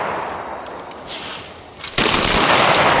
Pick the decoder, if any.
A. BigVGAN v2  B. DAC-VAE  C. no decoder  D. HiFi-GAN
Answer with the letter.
C